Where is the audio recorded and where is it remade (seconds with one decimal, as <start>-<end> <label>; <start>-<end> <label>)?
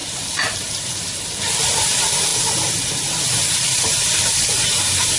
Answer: 0.0-5.2 recorded